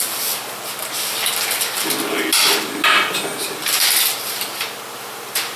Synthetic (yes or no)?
no